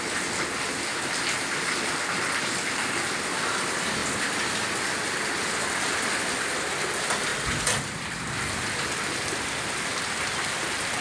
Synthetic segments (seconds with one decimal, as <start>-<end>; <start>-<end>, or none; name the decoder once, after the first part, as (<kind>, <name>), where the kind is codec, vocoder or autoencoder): 0.9-1.9 (vocoder, BigVGAN v2)